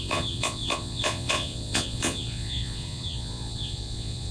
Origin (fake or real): fake